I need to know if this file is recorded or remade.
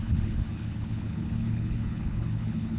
remade